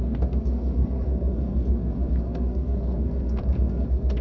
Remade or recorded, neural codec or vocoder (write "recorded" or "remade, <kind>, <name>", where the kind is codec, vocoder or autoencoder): remade, codec, SNAC